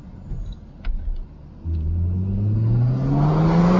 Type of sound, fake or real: real